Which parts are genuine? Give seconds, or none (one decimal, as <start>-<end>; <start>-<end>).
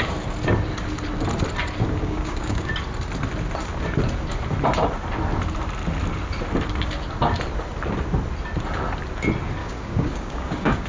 0.0-2.0; 2.7-9.6